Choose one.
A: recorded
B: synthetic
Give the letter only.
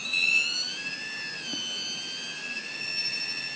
A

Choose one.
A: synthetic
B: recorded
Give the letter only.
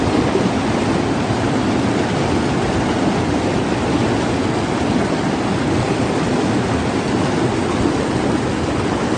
B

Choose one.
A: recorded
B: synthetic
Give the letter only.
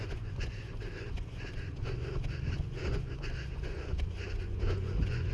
B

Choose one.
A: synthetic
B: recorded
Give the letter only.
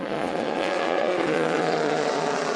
A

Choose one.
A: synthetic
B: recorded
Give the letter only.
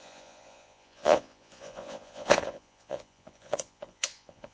A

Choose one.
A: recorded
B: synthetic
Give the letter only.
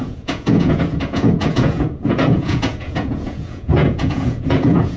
B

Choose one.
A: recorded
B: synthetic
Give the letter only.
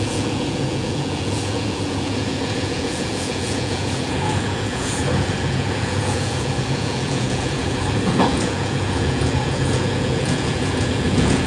B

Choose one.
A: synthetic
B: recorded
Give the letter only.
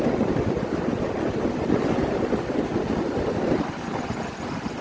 B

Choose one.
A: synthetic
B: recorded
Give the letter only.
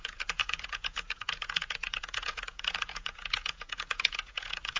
A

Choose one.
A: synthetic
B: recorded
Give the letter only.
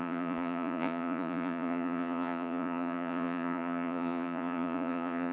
A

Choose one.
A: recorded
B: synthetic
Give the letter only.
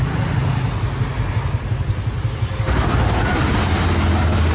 A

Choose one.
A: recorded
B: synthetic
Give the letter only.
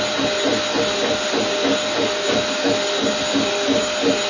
A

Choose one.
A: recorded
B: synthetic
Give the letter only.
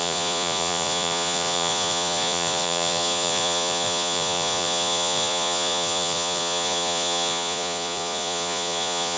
B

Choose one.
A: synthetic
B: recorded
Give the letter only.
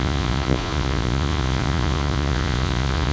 A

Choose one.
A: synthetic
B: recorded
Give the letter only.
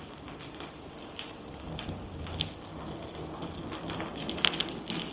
B